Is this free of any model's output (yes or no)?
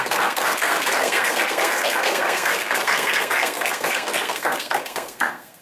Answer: no